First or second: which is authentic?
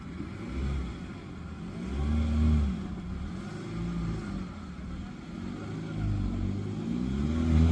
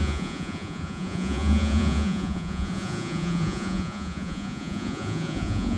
first